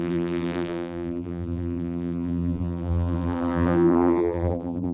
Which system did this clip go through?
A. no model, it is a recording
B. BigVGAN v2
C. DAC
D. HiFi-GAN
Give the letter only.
B